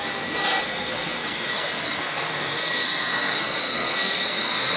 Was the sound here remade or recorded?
remade